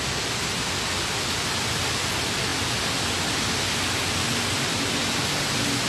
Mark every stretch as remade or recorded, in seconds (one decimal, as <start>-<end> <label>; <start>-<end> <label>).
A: 0.0-5.9 recorded